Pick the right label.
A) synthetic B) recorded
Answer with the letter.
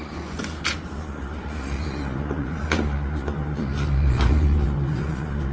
A